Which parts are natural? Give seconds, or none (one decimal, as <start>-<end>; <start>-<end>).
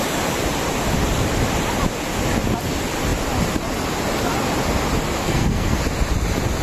0.0-5.2; 5.8-6.6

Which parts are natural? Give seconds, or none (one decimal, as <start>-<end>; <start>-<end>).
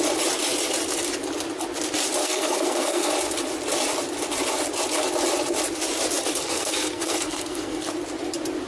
0.0-2.2; 3.1-6.4; 7.9-8.7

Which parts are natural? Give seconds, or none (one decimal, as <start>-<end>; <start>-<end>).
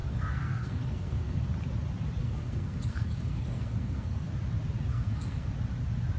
1.4-2.2; 4.3-4.9; 5.5-6.2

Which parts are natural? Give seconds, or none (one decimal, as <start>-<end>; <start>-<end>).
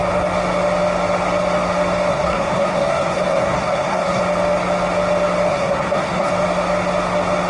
0.0-2.1; 4.2-5.5; 6.3-7.5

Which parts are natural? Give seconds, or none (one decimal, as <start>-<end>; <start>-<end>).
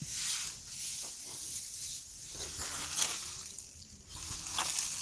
0.0-5.0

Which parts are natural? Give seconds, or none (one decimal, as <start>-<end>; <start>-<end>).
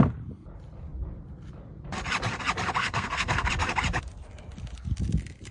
0.0-2.8; 3.5-5.5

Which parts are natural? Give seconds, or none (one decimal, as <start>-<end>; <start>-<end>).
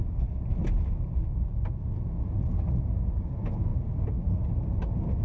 0.0-5.2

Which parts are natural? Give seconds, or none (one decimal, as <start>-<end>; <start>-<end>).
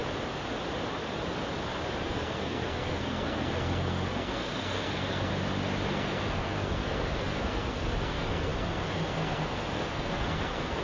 0.0-2.0; 5.3-5.9